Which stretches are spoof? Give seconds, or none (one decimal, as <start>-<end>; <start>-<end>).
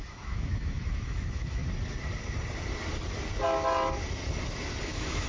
0.0-1.6; 4.8-5.3